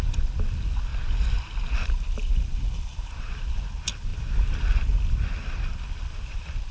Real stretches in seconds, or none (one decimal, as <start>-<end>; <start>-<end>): 0.9-1.7